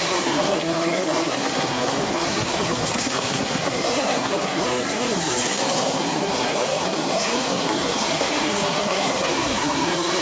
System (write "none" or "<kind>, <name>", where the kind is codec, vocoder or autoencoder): codec, SNAC